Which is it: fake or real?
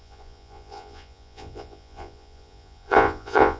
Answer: fake